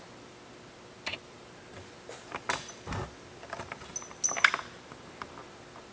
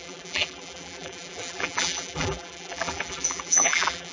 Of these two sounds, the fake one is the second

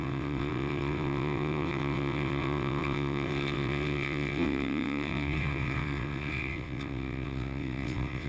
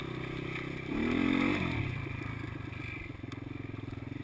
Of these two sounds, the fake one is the first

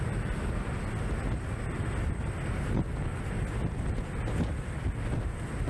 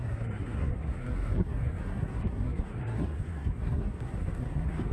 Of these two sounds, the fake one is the second